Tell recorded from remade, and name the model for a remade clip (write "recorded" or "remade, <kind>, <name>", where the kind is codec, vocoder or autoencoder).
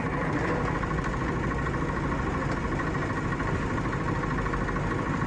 recorded